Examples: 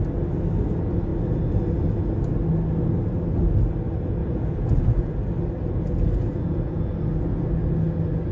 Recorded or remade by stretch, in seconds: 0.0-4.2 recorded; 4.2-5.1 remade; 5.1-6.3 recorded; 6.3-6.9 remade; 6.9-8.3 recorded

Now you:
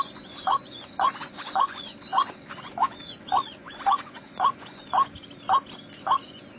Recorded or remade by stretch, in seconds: 0.0-5.2 remade; 5.2-6.0 recorded; 6.0-6.6 remade

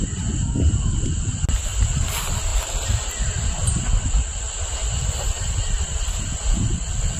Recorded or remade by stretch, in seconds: 0.0-7.2 recorded

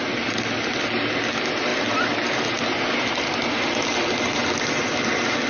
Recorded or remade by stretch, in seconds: 0.0-5.5 recorded

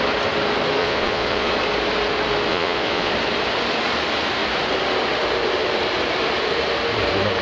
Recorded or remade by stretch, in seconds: 0.0-0.8 recorded; 0.8-1.5 remade; 1.5-2.5 recorded; 2.5-3.1 remade; 3.1-7.4 recorded

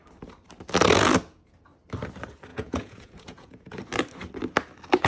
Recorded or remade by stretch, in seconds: 0.0-2.5 recorded; 2.5-3.8 remade; 3.8-5.1 recorded